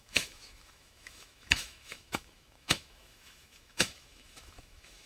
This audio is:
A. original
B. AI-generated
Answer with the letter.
B